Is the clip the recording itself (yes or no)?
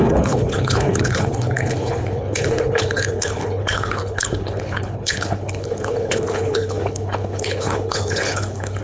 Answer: no